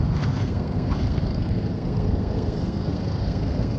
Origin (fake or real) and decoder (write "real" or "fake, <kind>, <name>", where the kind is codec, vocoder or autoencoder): fake, codec, SNAC